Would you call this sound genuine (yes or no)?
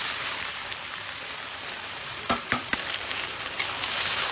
no